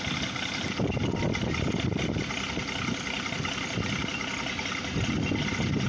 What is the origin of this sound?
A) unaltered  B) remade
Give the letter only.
A